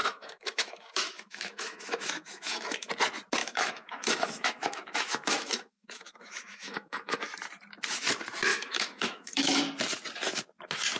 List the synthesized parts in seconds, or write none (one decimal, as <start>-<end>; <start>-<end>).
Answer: 0.0-2.9; 3.4-7.2; 8.5-9.6